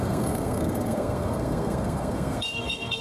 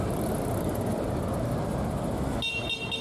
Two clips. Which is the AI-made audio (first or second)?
first